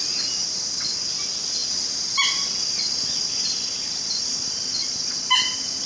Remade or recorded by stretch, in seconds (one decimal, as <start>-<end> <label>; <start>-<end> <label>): 0.0-5.9 recorded